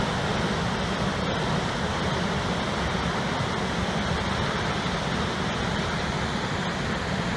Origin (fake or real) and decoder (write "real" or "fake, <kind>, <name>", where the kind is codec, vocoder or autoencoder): real